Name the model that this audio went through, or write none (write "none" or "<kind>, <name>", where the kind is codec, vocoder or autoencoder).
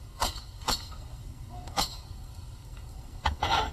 codec, SNAC